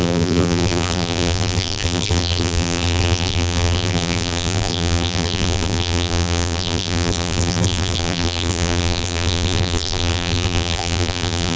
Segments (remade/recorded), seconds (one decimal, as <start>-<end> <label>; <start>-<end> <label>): 0.0-11.6 remade